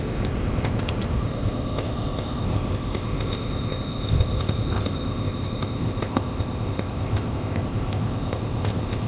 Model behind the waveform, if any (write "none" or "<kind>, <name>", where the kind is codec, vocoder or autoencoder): codec, ZipCodec